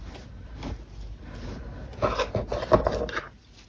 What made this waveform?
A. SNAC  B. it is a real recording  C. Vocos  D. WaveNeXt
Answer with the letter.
B